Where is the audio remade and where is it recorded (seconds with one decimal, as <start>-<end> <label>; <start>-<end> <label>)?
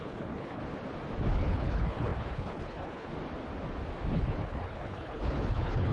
0.0-0.6 remade; 0.6-1.3 recorded; 1.3-3.1 remade; 3.1-4.1 recorded; 4.1-5.9 remade